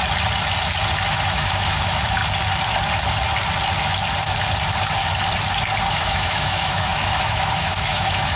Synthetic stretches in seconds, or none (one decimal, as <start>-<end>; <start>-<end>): 1.1-2.2; 5.9-8.4